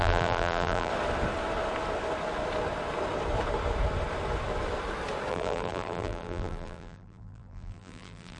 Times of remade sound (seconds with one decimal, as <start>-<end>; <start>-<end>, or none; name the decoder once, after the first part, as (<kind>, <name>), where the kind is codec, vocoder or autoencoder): 0.0-0.9 (vocoder, BigVGAN v2); 5.3-8.4